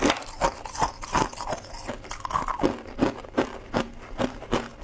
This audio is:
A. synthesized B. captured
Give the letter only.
B